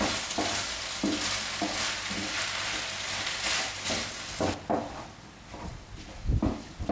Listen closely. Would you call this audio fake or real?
real